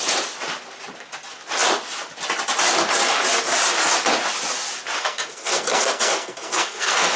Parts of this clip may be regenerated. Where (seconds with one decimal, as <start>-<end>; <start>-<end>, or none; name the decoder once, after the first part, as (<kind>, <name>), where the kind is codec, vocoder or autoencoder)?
5.0-7.2 (codec, SNAC)

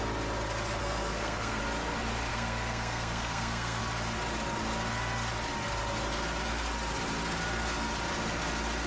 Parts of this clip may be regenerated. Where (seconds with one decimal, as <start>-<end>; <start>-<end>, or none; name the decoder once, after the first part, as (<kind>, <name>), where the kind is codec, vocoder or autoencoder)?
0.8-1.6 (codec, SNAC); 2.3-3.8

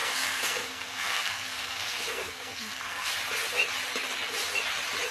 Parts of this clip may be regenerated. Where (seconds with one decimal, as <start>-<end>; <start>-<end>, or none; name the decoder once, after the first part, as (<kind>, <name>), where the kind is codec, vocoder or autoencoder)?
0.0-3.1 (codec, SNAC)